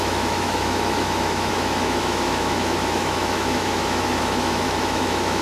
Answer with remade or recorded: remade